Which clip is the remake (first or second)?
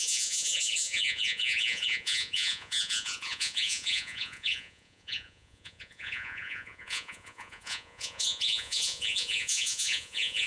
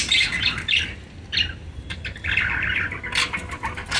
first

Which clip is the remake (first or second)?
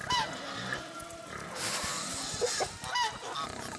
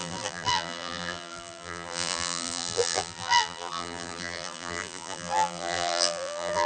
second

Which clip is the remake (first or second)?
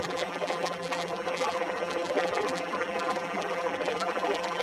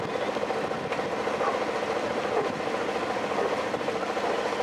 first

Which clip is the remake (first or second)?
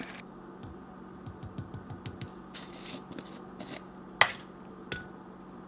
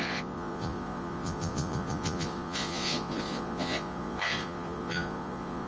second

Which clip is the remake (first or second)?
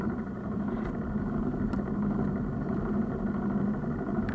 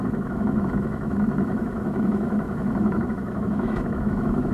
second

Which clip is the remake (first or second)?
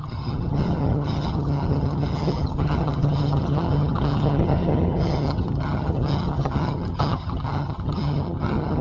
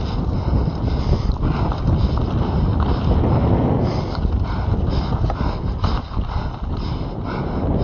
first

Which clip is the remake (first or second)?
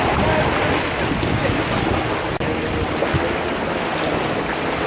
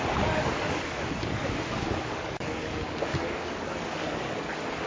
second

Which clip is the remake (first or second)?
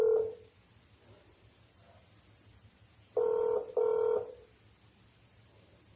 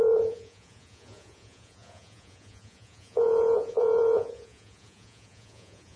second